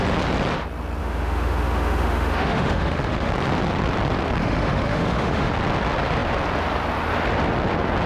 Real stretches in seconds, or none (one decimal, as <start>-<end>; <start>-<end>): 0.0-1.0; 3.3-4.4; 5.5-8.1